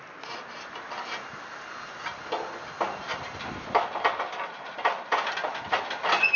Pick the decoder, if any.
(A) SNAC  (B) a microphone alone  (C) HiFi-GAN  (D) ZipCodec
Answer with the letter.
B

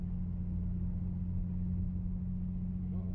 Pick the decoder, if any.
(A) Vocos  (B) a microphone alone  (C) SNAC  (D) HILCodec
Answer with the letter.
B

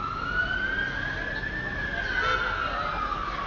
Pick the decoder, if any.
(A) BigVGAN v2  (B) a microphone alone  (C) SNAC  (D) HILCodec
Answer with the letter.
B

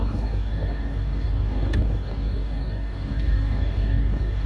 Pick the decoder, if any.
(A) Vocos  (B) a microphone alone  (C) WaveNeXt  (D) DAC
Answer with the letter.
D